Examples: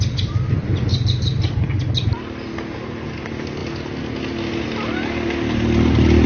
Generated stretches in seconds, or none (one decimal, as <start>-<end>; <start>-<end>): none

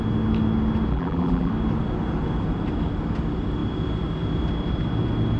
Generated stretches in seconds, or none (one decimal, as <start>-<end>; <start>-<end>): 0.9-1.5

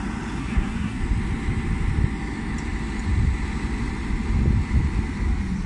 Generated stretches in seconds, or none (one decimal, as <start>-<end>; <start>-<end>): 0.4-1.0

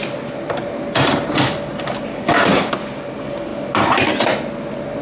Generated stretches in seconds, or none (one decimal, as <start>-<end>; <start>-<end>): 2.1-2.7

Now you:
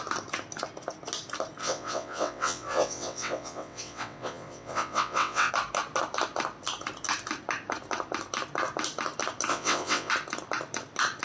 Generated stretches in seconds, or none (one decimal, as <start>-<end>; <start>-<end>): 1.6-5.5; 9.5-10.1

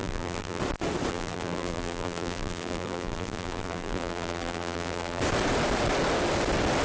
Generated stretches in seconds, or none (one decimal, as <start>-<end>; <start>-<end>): 0.0-0.6; 1.1-5.2